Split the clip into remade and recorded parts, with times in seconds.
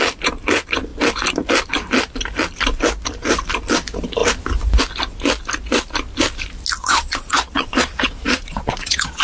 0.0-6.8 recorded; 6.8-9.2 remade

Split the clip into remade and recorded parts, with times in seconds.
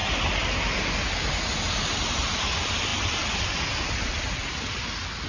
0.0-5.3 recorded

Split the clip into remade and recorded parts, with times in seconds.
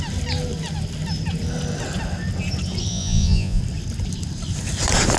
0.0-2.9 recorded; 2.9-3.6 remade; 3.6-5.2 recorded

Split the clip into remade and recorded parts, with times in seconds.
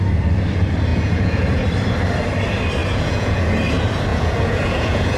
0.0-0.9 recorded; 0.9-1.6 remade; 1.6-2.8 recorded; 2.8-3.5 remade; 3.5-4.1 recorded; 4.1-5.2 remade